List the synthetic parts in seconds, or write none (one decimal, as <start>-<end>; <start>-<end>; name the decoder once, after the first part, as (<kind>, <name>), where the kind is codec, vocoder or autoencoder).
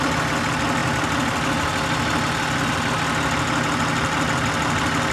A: none